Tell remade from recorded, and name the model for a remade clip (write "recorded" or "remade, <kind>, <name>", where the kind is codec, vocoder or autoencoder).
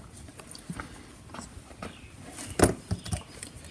recorded